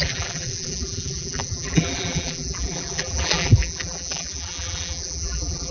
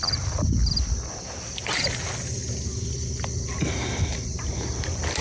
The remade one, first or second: first